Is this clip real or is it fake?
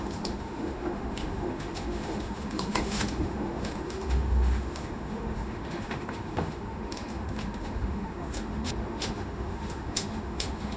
fake